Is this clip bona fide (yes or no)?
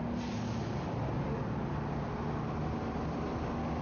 yes